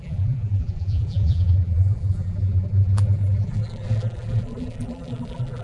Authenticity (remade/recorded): remade